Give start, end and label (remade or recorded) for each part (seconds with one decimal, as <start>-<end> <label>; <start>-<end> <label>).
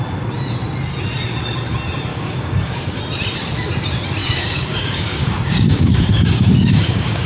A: 0.0-2.1 recorded; 2.1-3.0 remade; 3.0-4.2 recorded; 4.2-7.3 remade